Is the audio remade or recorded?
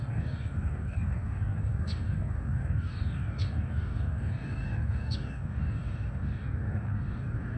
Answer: remade